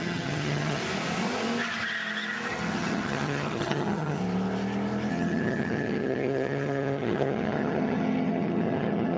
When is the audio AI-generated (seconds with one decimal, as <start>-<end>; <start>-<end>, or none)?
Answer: 0.0-0.8; 2.5-4.2; 5.1-9.2